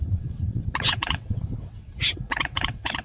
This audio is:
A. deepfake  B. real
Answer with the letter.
A